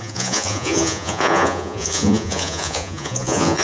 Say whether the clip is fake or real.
fake